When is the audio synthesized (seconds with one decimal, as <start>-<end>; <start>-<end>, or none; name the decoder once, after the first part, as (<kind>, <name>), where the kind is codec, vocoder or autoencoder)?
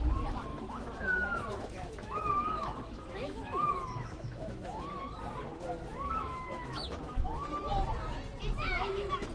0.5-5.0 (autoencoder, DAC-VAE); 5.9-7.5; 8.6-9.3